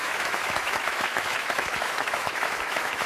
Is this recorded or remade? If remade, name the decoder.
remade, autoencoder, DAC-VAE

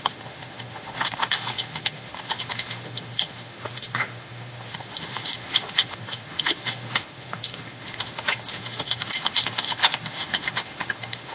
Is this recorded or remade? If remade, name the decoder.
remade, autoencoder, DAC-VAE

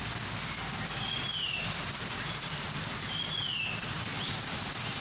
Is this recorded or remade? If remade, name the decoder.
recorded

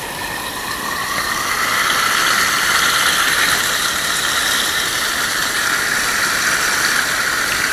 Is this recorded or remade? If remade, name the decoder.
recorded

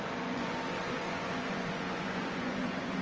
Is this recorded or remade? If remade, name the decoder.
remade, vocoder, Vocos